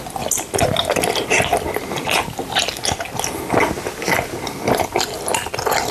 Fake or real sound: real